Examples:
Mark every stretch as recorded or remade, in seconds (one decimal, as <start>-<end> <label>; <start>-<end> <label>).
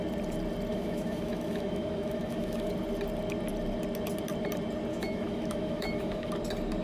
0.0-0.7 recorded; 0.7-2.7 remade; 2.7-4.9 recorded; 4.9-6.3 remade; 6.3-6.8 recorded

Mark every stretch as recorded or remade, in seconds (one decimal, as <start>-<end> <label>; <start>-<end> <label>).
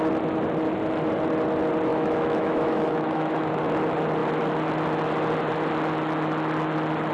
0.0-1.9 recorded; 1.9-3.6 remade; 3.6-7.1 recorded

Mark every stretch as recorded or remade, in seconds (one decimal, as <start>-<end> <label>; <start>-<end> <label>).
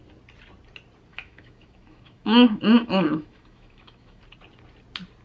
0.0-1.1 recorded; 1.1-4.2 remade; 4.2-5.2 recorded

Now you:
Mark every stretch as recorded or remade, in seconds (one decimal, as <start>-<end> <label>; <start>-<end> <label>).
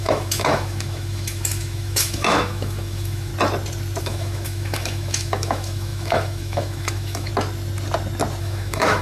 0.0-3.3 remade; 3.3-4.0 recorded; 4.0-7.3 remade; 7.3-8.4 recorded; 8.4-9.0 remade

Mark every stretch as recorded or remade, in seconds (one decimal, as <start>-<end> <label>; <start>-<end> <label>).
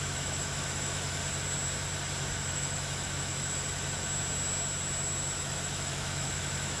0.0-1.2 remade; 1.2-2.5 recorded; 2.5-3.3 remade; 3.3-5.4 recorded; 5.4-6.8 remade